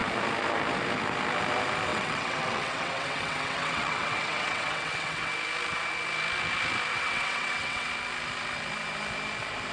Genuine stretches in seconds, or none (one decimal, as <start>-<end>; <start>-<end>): 0.0-1.9; 5.3-6.9; 7.9-9.7

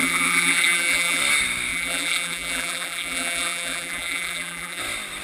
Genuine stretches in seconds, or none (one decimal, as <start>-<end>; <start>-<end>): 1.2-1.7; 4.8-5.2

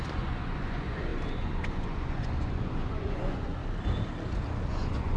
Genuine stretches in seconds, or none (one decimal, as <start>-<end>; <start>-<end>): 3.6-4.7